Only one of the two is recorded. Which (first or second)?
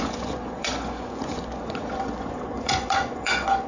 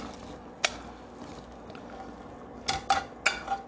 second